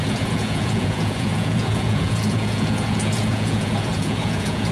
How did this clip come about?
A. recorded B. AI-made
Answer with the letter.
B